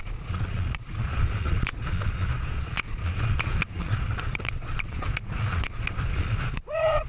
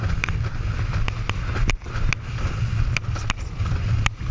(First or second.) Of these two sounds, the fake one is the first